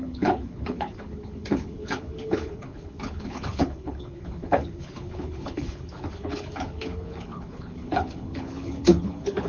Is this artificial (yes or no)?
yes